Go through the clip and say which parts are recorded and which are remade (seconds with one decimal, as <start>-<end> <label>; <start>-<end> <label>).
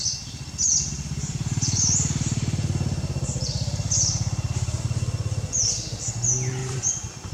0.0-0.7 recorded; 0.7-4.8 remade; 4.8-6.6 recorded; 6.6-7.3 remade